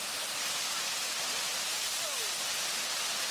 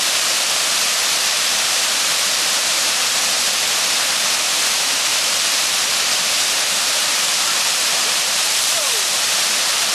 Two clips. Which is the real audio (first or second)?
first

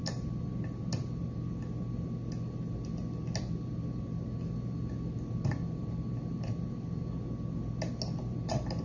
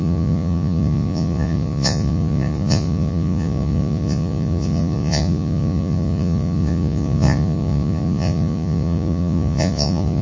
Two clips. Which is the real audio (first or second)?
first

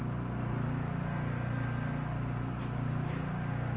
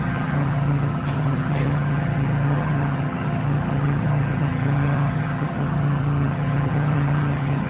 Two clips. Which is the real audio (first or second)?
first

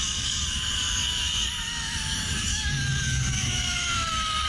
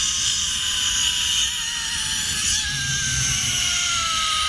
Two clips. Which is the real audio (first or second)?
second